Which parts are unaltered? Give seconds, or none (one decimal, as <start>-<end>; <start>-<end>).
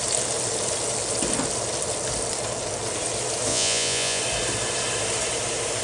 0.0-3.5; 4.2-5.8